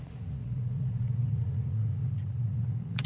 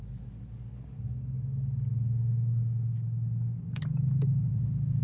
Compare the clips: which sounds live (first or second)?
second